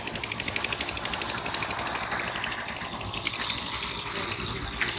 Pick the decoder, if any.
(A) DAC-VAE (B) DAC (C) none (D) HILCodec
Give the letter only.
C